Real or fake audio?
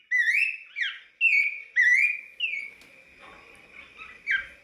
real